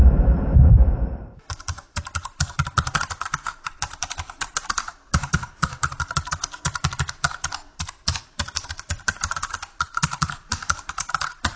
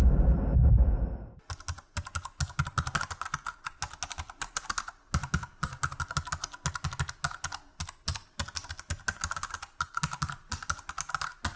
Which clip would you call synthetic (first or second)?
first